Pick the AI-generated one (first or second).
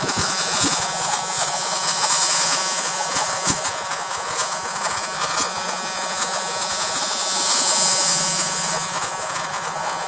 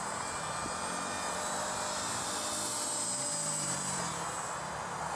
first